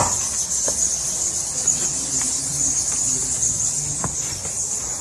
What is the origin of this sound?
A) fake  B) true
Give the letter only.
B